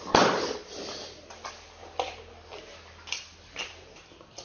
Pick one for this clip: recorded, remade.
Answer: recorded